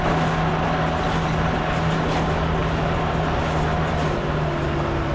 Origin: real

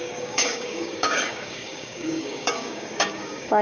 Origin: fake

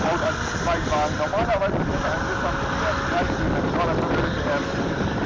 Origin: real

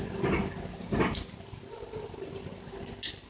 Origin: real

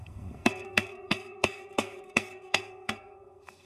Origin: fake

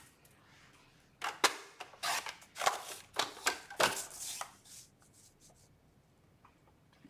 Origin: real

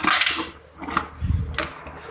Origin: real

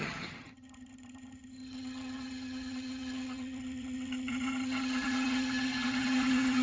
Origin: fake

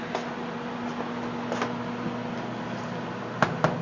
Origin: real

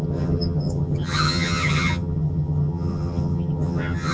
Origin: fake